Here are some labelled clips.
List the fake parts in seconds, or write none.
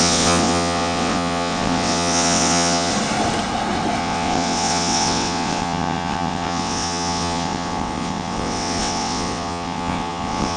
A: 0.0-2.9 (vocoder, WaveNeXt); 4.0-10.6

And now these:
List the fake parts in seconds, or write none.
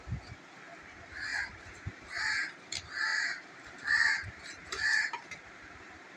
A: 1.3-2.3 (vocoder, BigVGAN v2); 3.1-5.5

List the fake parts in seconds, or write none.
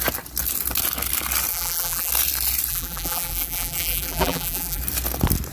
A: 1.5-2.1 (vocoder, BigVGAN v2); 2.7-4.8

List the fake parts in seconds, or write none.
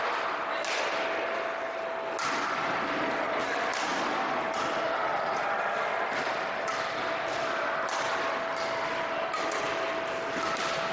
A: 3.9-4.6 (vocoder, BigVGAN v2); 5.1-6.8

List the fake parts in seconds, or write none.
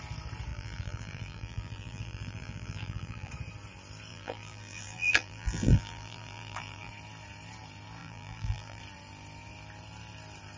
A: 0.5-3.3 (vocoder, BigVGAN v2); 4.1-6.9; 8.0-8.8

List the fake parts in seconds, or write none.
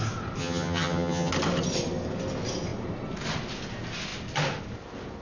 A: 0.4-1.3 (vocoder, HiFi-GAN)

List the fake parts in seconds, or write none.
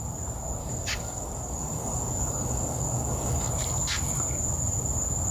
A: 0.6-3.5 (codec, DAC)